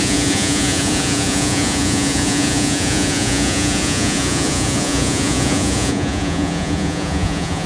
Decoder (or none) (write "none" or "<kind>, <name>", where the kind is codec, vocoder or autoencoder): vocoder, Vocos